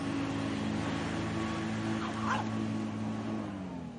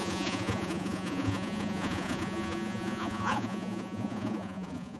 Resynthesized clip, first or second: second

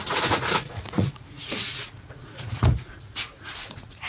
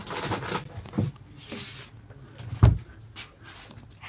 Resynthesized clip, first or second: first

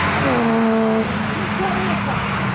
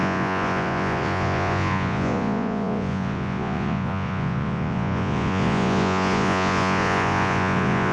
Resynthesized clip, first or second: second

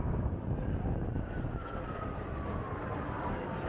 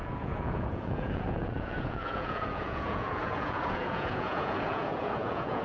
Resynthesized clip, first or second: second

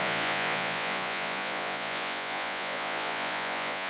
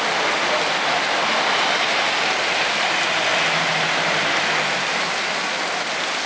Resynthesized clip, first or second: first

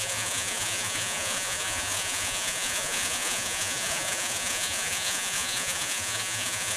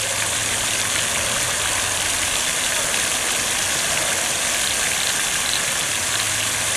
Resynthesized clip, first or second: first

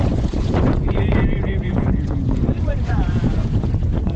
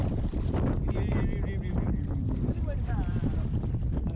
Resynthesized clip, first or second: first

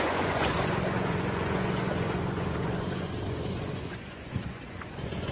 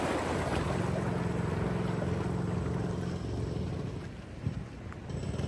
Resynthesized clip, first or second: first